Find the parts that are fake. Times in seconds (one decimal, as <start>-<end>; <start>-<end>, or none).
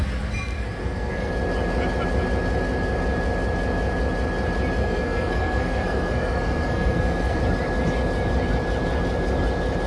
0.8-1.3; 4.8-7.4